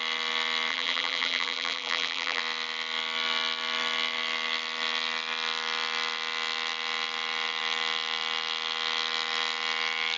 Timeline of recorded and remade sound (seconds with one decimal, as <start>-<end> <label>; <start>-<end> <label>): 0.0-0.7 recorded; 0.7-2.4 remade; 2.4-10.2 recorded